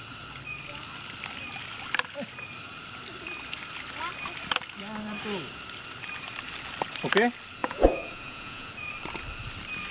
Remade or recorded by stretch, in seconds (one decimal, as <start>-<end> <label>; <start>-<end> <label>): 0.0-7.6 recorded; 7.6-8.7 remade; 8.7-9.9 recorded